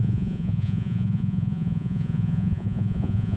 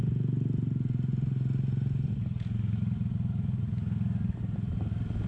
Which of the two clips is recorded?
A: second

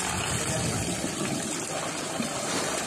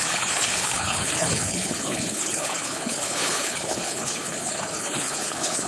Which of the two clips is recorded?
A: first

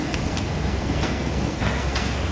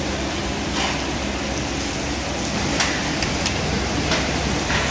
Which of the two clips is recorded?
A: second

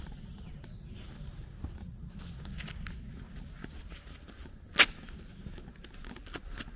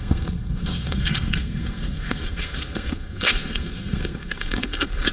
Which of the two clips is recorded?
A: first